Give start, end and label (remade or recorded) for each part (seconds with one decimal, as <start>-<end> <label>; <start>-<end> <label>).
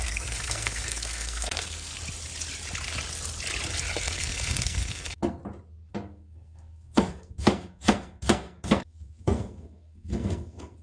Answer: 0.0-1.9 remade; 1.9-4.0 recorded; 4.0-5.4 remade; 5.4-5.9 recorded; 5.9-10.8 remade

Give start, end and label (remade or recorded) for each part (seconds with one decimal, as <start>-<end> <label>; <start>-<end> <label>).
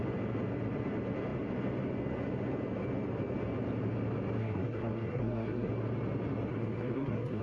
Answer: 0.0-4.4 recorded; 4.4-5.7 remade; 5.7-6.5 recorded; 6.5-7.4 remade